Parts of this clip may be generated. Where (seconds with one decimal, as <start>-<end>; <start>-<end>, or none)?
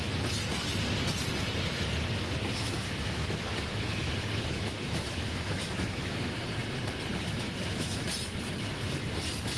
2.5-6.5; 7.1-8.1